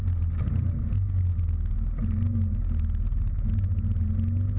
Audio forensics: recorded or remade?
recorded